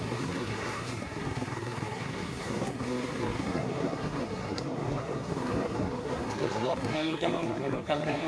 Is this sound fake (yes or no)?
yes